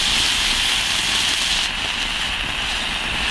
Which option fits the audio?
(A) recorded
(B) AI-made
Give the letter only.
A